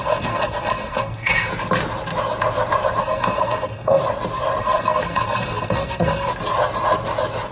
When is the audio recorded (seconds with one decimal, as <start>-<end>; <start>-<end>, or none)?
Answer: 1.5-3.0; 4.0-4.6; 6.3-7.5